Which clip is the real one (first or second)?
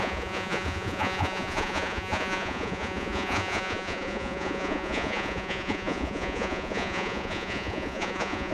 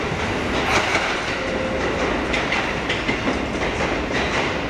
second